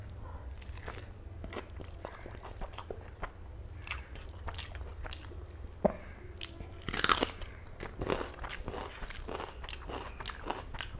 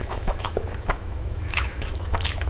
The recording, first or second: first